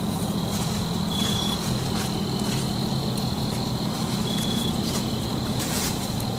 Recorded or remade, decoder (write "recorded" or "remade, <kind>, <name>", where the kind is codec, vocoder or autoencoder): remade, vocoder, Vocos